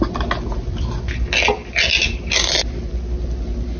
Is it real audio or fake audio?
real